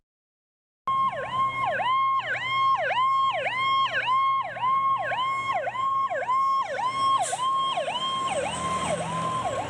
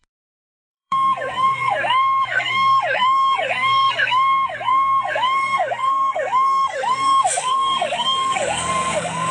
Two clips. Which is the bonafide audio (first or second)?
first